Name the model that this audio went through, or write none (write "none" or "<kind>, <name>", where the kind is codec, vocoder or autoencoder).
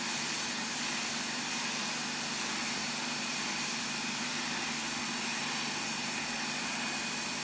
none